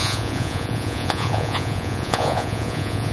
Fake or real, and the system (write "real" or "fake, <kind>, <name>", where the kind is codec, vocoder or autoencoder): fake, vocoder, Vocos